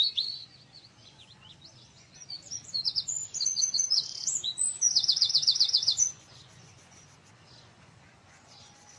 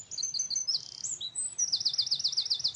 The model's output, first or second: first